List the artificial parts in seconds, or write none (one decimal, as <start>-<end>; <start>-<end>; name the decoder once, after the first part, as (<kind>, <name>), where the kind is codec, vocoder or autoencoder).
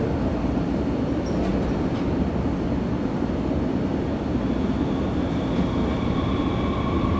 none